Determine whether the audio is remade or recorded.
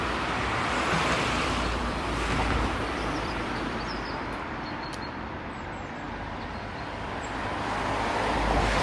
remade